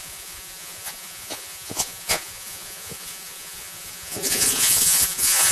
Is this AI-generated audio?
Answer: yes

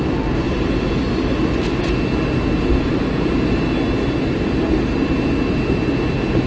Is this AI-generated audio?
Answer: no